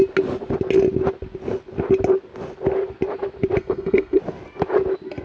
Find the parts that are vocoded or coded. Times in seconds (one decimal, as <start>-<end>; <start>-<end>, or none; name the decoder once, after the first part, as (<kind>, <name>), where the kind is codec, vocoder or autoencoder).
3.6-4.2 (codec, SNAC)